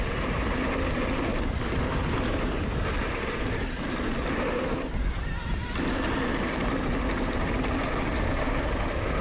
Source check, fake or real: real